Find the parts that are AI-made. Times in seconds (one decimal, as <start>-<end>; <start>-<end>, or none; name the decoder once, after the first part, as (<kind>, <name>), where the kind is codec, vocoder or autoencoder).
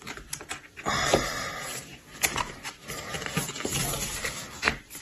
1.0-3.2 (vocoder, BigVGAN v2); 3.7-4.3